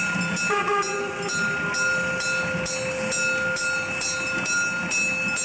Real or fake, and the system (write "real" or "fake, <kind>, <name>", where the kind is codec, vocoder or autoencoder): real